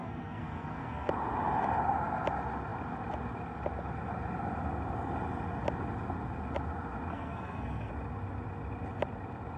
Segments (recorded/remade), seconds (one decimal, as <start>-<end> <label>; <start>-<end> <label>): 0.0-1.1 remade; 1.1-7.1 recorded; 7.1-7.9 remade; 7.9-9.6 recorded